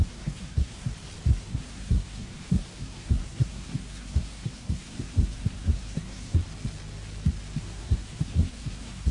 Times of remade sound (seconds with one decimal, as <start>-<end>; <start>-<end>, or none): 0.0-0.9; 1.4-6.4; 7.6-9.1